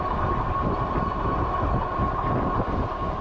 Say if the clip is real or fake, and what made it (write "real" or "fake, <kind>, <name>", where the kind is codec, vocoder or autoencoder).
real